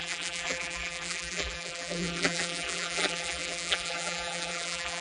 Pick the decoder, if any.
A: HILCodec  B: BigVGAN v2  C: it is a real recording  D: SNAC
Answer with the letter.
B